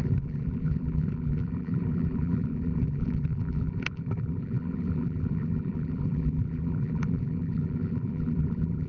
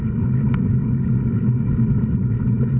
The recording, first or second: second